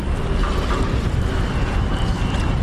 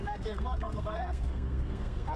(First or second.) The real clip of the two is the first